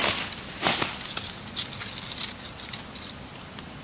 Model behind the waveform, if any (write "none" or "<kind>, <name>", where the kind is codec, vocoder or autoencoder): none